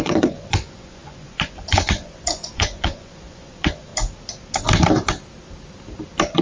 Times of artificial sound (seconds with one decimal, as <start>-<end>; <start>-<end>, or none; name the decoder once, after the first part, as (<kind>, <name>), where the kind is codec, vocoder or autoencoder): 0.0-3.9 (vocoder, Vocos)